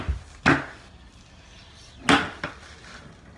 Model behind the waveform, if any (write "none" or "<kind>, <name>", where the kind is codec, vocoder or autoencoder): none